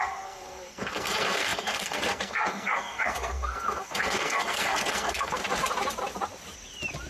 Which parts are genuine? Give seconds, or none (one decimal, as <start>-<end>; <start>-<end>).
5.4-7.1

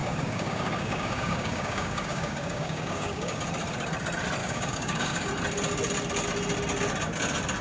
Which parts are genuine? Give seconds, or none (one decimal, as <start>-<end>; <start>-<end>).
3.4-4.4; 5.3-7.6

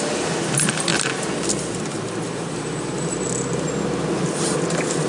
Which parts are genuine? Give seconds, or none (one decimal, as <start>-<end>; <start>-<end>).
0.0-5.1

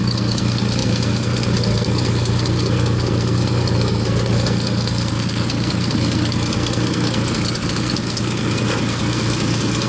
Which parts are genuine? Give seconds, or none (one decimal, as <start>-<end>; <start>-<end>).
none

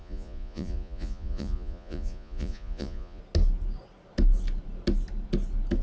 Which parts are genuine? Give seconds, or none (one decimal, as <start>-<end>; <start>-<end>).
3.2-5.8

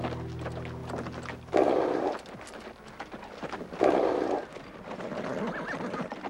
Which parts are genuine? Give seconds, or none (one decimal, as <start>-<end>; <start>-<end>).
0.0-6.3

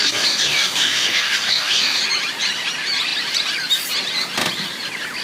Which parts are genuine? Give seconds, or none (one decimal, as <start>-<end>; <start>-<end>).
2.0-5.2

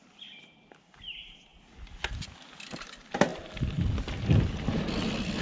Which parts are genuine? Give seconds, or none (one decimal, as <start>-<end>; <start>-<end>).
0.0-5.4